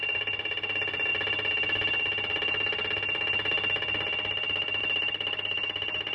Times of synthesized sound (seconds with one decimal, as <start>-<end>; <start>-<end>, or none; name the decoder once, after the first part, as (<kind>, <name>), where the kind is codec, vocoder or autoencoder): none